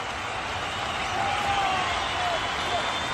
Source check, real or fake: real